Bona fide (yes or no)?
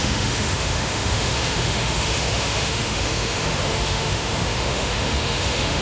no